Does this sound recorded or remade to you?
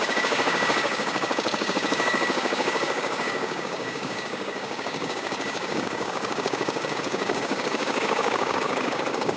remade